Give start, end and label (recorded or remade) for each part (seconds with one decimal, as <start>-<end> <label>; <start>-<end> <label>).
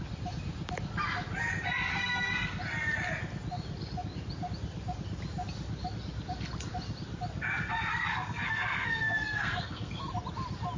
0.0-1.9 recorded; 1.9-2.6 remade; 2.6-7.9 recorded; 7.9-10.0 remade; 10.0-10.8 recorded